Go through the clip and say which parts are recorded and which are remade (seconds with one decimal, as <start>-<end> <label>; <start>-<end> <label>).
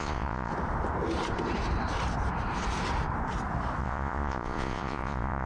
0.0-0.5 remade; 0.5-3.8 recorded; 3.8-5.5 remade